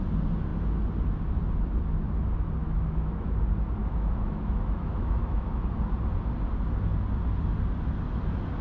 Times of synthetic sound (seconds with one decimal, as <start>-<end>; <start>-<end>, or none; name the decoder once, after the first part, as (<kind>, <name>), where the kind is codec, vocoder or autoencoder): 2.6-3.4 (autoencoder, DAC-VAE); 3.8-5.5